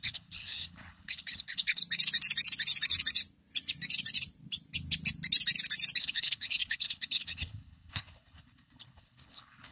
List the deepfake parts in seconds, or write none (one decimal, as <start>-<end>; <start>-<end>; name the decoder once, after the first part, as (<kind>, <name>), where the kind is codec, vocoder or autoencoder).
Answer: 0.0-1.8 (codec, HILCodec); 6.0-9.7